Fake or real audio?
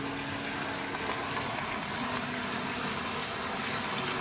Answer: real